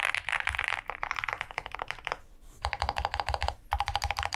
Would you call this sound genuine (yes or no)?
yes